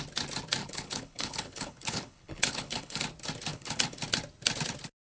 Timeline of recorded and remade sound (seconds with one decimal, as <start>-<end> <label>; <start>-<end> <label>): 0.0-0.6 recorded; 0.6-3.0 remade; 3.0-3.5 recorded; 3.5-4.0 remade; 4.0-5.1 recorded